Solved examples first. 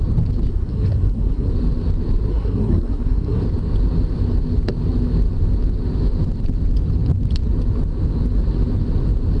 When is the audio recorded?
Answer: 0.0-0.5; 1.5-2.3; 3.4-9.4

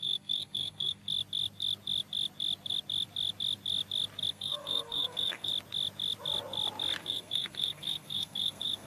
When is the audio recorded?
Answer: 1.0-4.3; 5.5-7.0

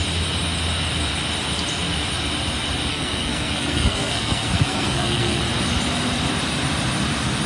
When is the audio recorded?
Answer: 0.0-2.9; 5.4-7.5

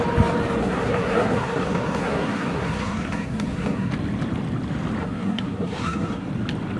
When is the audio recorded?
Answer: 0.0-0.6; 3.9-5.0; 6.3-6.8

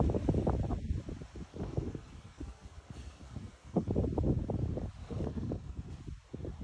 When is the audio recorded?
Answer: 0.0-1.5; 3.9-5.0; 6.0-6.6

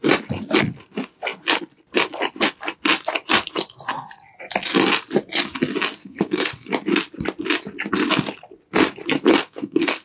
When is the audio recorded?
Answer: 0.0-6.0; 6.7-9.3

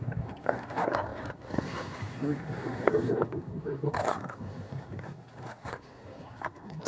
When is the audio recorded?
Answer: none